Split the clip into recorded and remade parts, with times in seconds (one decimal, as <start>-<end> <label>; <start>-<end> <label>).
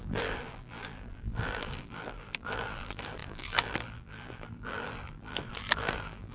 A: 0.0-6.3 remade